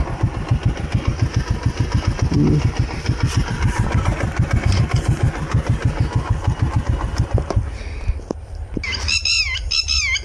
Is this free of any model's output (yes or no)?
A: yes